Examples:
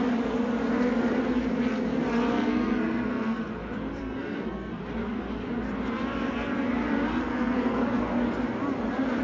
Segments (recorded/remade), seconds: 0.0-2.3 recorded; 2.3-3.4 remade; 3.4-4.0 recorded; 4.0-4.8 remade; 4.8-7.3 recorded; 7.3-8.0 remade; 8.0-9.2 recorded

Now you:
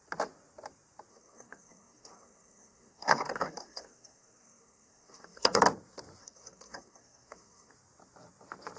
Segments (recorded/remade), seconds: 0.0-1.1 recorded; 1.1-5.6 remade; 5.6-6.2 recorded; 6.2-7.7 remade; 7.7-8.8 recorded

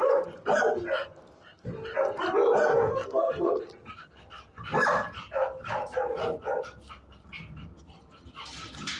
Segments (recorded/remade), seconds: 0.0-2.7 recorded; 2.7-3.6 remade; 3.6-9.0 recorded

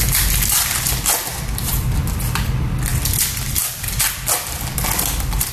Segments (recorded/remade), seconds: 0.0-5.5 recorded

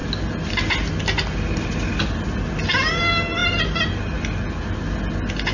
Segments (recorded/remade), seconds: 0.0-5.5 recorded

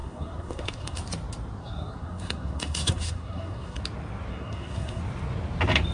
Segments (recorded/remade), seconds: 0.0-1.0 remade; 1.0-1.6 recorded; 1.6-3.8 remade; 3.8-4.3 recorded; 4.3-5.0 remade; 5.0-5.9 recorded